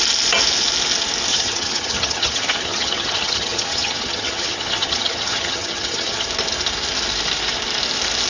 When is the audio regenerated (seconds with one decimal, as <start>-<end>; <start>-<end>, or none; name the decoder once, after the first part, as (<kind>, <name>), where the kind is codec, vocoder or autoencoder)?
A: 1.3-6.3 (vocoder, HiFi-GAN)